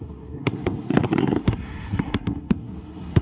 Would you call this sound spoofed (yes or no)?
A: yes